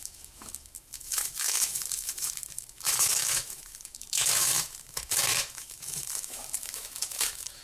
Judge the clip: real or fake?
fake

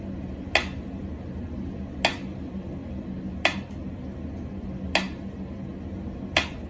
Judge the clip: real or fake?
real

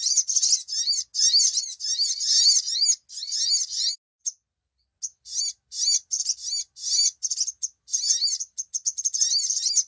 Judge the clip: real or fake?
real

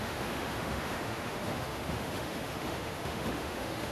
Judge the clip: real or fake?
fake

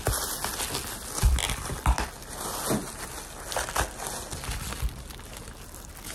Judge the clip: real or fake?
real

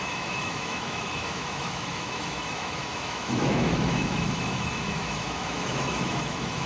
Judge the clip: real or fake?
fake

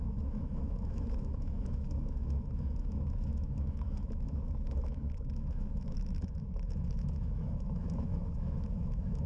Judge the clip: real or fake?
fake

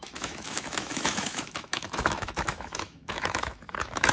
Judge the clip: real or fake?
fake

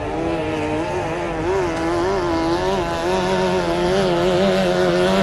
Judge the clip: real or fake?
real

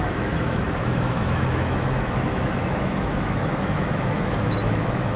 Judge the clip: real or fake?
fake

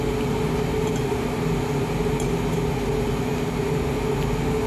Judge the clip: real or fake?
real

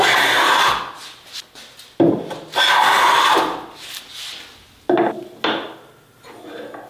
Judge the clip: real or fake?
real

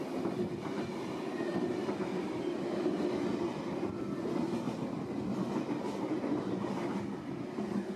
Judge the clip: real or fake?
real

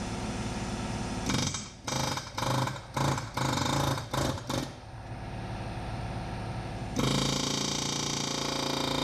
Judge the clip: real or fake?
real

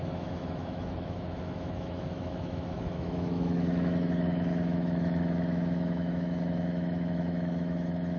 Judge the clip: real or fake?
fake